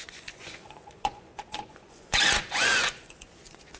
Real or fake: fake